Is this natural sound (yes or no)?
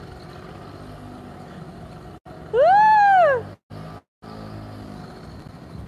yes